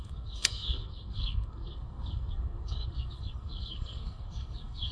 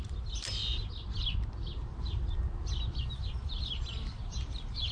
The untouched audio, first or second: second